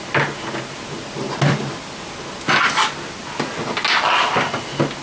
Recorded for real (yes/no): yes